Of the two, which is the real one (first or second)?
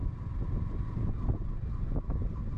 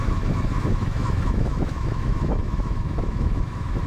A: first